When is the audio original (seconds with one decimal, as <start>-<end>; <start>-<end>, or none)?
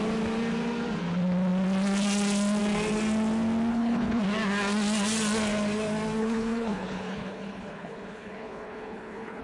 0.0-3.7; 4.2-6.2